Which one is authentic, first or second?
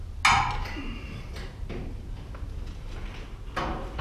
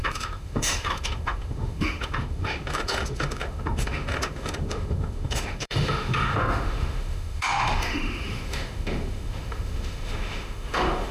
first